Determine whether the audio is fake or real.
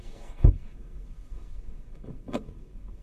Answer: fake